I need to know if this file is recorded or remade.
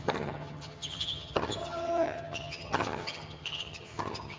remade